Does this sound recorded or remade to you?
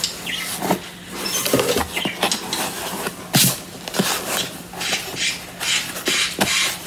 recorded